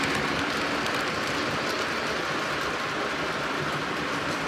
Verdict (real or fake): real